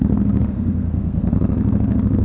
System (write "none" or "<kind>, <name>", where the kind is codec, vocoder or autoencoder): codec, SNAC